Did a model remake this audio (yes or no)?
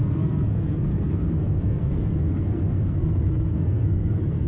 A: yes